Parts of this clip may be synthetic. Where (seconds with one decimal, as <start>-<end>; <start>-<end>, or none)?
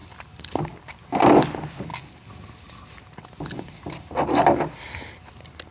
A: 0.0-0.6; 1.9-5.3